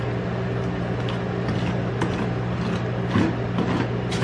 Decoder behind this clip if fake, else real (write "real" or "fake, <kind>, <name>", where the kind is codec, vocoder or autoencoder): real